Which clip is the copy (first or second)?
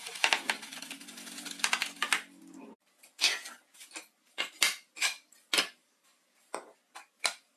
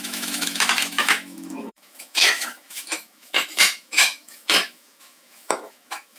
second